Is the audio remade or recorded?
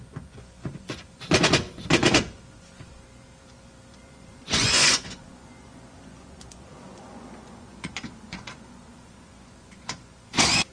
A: remade